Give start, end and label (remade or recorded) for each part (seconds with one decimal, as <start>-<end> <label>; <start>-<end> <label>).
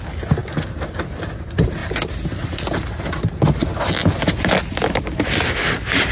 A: 0.0-6.1 recorded